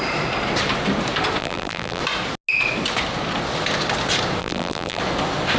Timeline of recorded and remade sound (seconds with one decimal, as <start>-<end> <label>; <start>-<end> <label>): 0.0-1.4 recorded; 1.4-2.0 remade; 2.0-4.4 recorded; 4.4-5.0 remade; 5.0-5.6 recorded